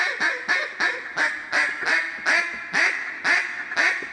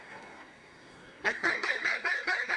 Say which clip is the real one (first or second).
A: first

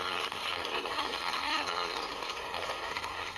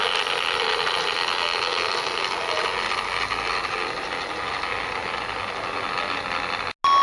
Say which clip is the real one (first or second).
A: second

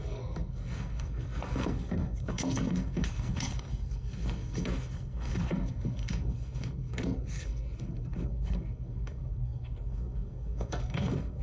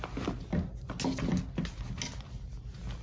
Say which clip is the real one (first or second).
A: second